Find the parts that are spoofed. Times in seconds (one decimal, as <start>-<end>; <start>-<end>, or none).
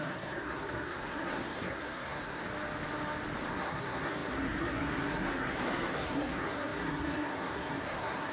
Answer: 0.0-2.4; 3.5-8.3